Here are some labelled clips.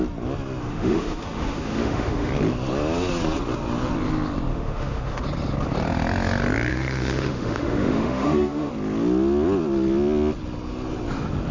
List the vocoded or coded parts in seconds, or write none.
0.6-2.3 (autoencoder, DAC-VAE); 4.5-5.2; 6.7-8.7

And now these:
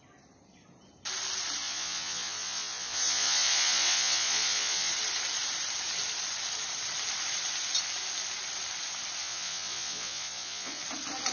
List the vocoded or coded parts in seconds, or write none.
1.6-4.9 (vocoder, Vocos); 9.2-10.8

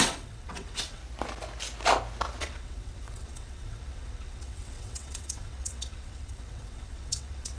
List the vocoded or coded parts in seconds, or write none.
0.0-1.0 (vocoder, WaveNeXt); 2.4-7.6

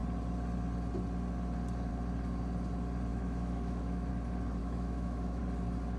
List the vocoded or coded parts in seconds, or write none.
3.1-4.1 (autoencoder, DAC-VAE); 4.6-5.4

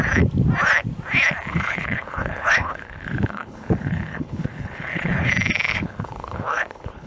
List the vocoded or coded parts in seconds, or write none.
1.5-5.3 (codec, HILCodec); 5.7-7.1

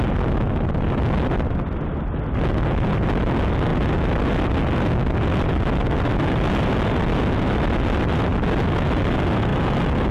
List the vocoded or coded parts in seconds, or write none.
none

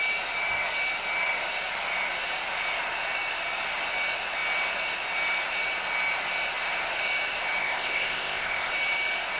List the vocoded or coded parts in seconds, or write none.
7.6-8.7 (codec, ZipCodec)

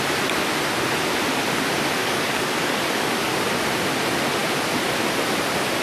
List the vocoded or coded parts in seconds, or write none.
2.0-3.3 (codec, DAC)